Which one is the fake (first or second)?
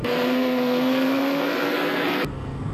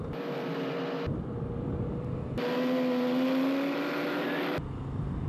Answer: first